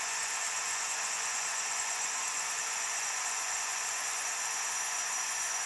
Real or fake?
fake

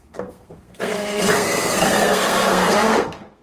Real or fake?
fake